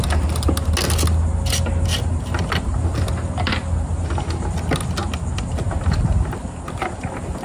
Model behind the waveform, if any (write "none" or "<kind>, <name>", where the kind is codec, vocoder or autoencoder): none